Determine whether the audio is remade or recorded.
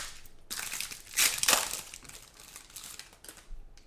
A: recorded